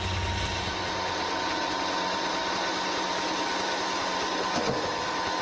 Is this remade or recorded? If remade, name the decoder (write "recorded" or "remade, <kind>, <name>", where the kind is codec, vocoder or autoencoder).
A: recorded